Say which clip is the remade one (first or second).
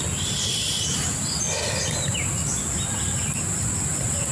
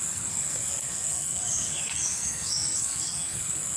second